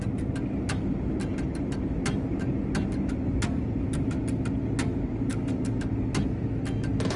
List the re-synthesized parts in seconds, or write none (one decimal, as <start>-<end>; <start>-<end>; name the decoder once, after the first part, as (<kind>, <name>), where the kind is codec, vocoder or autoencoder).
5.3-5.8 (codec, DAC)